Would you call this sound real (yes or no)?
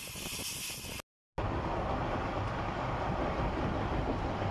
yes